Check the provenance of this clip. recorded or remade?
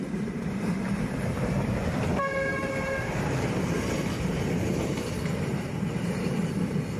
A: remade